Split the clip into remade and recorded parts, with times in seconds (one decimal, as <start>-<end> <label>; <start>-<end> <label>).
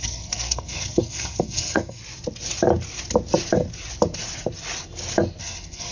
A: 0.0-2.0 remade; 2.0-5.4 recorded; 5.4-5.9 remade